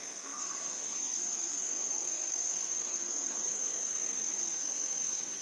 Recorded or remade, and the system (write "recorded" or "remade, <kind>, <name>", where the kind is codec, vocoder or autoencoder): remade, codec, SNAC